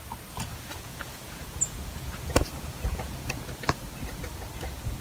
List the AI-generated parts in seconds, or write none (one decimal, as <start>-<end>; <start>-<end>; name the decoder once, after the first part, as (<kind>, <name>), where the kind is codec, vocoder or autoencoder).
0.5-3.5 (vocoder, Vocos); 4.3-5.0